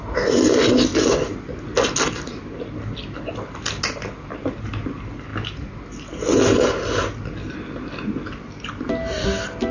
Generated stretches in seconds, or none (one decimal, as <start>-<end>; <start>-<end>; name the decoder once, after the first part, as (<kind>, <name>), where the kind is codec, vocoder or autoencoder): none